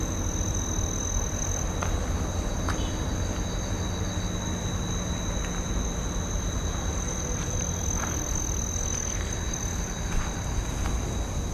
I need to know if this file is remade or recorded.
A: recorded